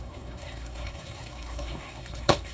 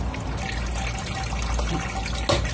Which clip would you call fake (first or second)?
first